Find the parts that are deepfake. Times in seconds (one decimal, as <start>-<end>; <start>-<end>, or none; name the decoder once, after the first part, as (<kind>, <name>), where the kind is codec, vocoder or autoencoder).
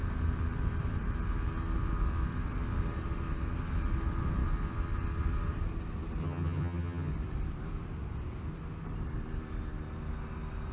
6.2-7.1 (vocoder, HiFi-GAN)